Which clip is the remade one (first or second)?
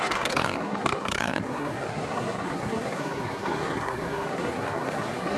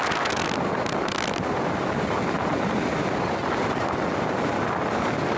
first